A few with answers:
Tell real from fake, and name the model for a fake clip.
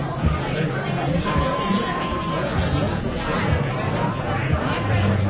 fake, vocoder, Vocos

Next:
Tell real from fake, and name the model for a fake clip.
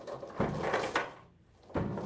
real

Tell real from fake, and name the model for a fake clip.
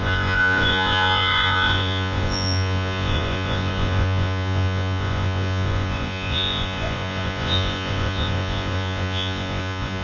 fake, vocoder, Vocos